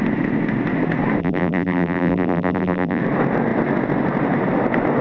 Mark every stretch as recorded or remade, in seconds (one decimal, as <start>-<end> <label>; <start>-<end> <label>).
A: 0.0-1.2 recorded; 1.2-3.0 remade; 3.0-5.0 recorded